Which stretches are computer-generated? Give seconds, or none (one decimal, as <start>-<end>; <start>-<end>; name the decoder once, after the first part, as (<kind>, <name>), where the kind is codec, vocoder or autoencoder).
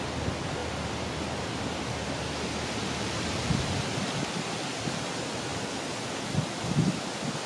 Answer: none